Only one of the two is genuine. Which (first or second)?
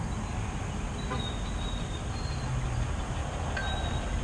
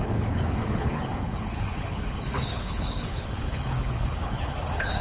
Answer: first